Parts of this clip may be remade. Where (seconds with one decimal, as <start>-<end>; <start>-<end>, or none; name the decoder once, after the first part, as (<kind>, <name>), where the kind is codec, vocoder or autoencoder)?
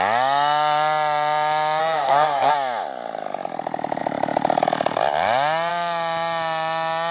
1.8-2.5 (codec, SNAC)